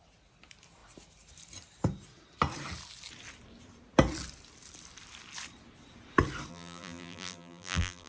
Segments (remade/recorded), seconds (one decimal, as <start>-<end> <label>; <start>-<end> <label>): 0.0-6.5 recorded; 6.5-8.1 remade